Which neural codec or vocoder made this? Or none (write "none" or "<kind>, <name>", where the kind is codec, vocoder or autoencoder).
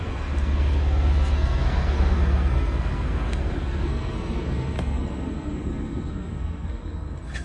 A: codec, SNAC